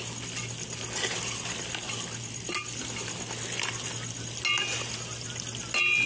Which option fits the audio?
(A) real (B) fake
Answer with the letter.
A